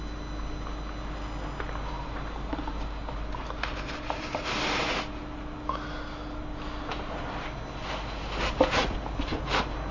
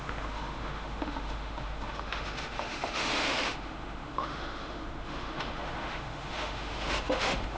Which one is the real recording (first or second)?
first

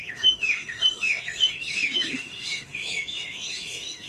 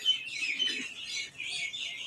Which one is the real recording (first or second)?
second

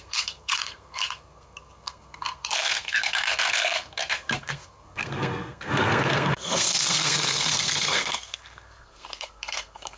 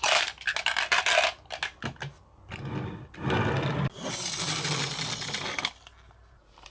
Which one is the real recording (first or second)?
second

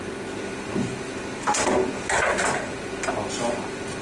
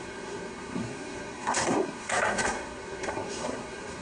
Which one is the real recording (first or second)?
first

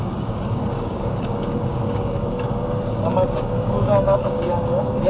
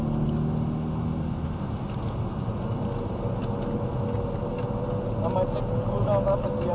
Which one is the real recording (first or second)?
second